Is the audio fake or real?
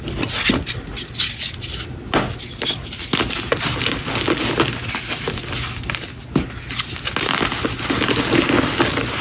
real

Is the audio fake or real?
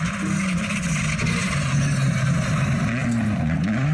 real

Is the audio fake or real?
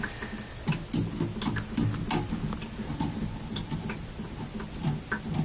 real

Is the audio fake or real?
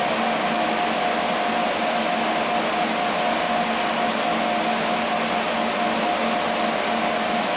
real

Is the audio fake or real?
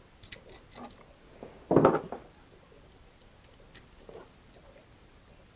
real